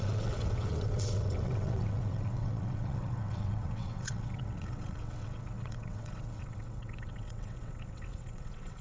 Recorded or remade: remade